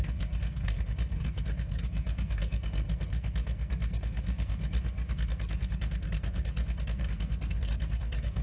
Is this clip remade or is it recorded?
remade